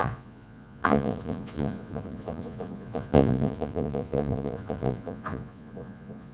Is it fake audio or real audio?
fake